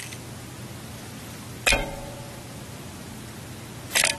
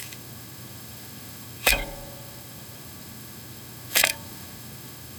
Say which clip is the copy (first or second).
second